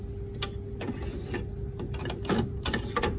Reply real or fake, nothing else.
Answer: real